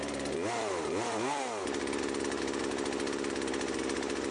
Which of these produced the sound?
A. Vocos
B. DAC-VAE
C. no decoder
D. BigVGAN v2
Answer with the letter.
C